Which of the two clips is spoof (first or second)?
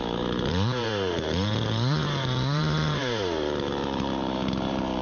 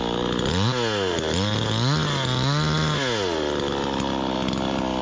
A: first